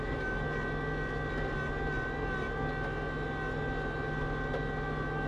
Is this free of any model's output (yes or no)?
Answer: yes